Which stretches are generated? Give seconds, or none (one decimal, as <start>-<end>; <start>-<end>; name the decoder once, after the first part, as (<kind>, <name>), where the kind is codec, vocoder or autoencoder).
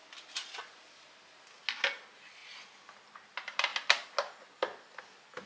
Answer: none